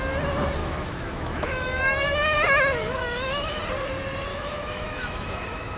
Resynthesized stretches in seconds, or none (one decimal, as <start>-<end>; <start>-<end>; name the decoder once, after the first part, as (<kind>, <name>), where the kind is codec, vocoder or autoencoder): 0.6-3.6 (autoencoder, DAC-VAE); 4.3-5.8